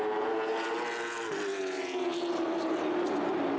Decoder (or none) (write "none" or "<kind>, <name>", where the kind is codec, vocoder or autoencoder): none